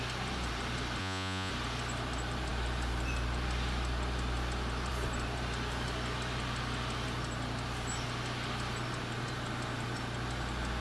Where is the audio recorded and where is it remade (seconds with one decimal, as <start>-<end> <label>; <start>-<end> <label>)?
0.0-1.0 recorded; 1.0-1.5 remade; 1.5-10.8 recorded